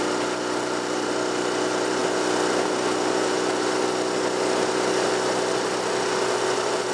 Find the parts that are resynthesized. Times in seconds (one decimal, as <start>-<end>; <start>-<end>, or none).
none